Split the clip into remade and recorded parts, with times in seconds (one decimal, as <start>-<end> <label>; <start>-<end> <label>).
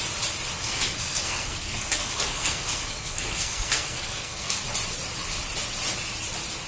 0.0-0.6 recorded; 0.6-4.6 remade; 4.6-6.7 recorded